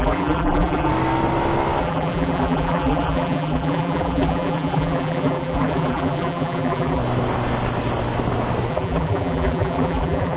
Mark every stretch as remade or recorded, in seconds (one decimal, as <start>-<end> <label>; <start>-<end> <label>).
0.0-0.9 remade; 0.9-1.8 recorded; 1.8-7.0 remade; 7.0-8.7 recorded; 8.7-10.4 remade